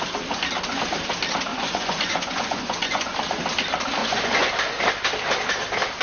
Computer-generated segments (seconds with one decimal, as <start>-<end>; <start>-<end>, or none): 1.5-3.1; 4.0-4.5